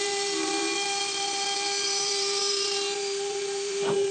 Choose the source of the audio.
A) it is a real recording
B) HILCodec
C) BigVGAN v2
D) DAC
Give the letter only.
C